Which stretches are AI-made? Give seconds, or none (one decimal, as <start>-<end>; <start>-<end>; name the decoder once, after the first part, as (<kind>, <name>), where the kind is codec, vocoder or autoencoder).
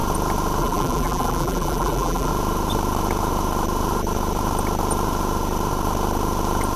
0.6-2.3 (vocoder, BigVGAN v2)